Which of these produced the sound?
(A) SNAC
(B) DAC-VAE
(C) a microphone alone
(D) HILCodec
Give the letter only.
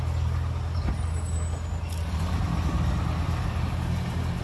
C